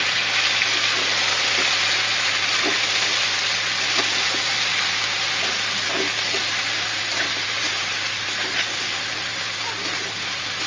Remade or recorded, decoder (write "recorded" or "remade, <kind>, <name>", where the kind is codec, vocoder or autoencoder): recorded